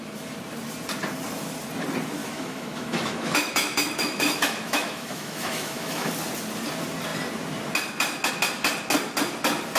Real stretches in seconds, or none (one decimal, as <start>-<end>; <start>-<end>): 0.0-2.2; 6.1-9.8